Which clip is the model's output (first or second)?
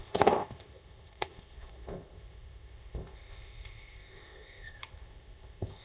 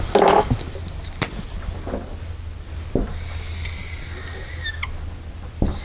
first